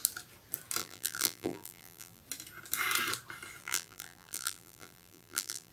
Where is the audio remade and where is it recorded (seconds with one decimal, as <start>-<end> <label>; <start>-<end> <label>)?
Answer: 0.0-0.8 recorded; 0.8-2.2 remade; 2.2-3.6 recorded; 3.6-5.7 remade